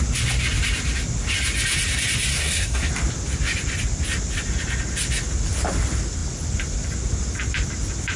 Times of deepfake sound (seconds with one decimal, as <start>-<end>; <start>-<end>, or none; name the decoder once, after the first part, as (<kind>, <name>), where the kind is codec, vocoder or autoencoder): 2.3-2.9 (codec, SNAC)